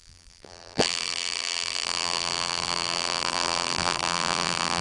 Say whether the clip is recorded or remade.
remade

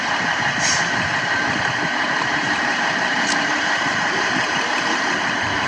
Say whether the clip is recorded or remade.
remade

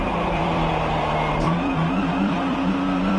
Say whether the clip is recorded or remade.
remade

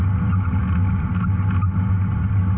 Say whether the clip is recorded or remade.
recorded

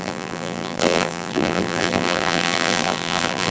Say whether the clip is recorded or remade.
remade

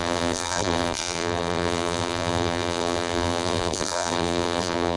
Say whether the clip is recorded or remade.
remade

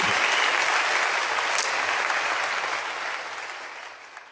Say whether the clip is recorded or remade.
recorded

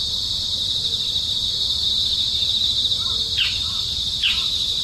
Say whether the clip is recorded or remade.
remade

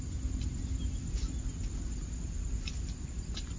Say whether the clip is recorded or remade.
recorded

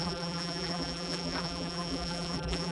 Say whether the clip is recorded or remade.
remade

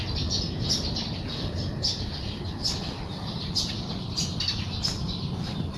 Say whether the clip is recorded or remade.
recorded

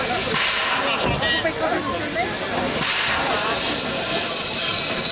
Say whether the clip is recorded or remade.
recorded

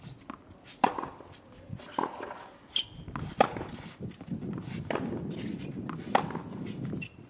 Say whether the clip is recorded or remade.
recorded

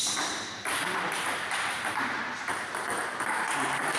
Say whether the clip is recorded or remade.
remade